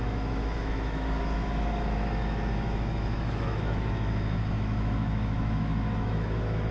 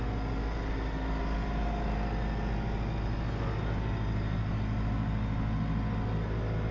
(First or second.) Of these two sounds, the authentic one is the second